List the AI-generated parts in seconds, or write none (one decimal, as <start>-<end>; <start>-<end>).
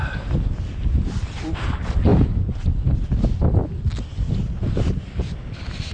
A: none